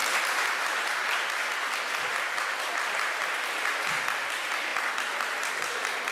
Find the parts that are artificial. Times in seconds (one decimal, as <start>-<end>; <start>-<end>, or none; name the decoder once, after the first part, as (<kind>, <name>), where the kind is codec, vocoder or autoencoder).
none